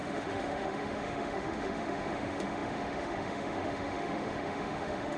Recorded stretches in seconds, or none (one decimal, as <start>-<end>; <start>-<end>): none

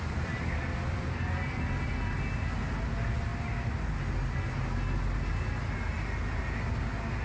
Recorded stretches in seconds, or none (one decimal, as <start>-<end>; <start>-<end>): 0.0-7.2

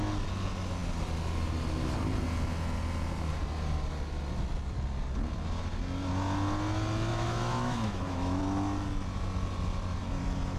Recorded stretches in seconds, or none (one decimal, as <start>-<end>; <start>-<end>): 0.0-7.1; 8.4-10.6

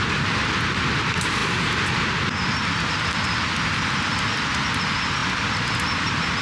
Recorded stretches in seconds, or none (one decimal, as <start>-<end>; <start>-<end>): 0.0-6.4

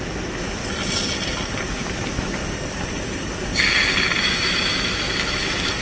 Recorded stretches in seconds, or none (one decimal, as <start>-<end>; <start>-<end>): 0.6-1.7; 2.4-4.2

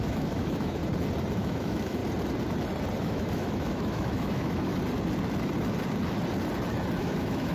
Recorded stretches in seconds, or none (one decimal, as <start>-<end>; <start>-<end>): 0.8-1.3; 2.0-3.0; 4.7-7.0

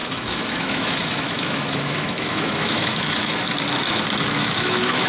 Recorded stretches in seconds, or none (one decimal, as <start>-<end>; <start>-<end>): 3.3-4.2

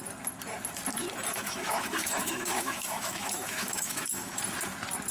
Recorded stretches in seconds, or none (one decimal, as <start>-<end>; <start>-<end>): 0.0-1.3; 4.4-5.1